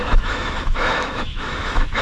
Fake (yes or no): yes